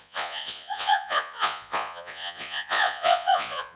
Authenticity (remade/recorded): remade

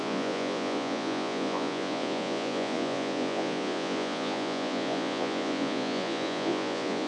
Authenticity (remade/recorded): remade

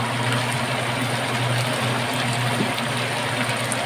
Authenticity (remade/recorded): recorded